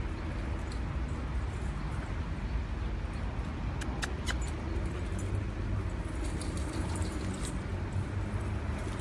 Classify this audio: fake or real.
real